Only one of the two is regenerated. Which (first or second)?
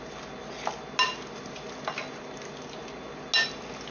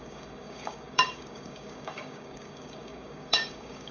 second